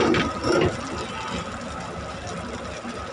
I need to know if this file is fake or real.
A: real